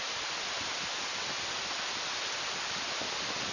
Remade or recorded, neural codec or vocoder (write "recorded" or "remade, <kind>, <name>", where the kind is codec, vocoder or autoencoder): recorded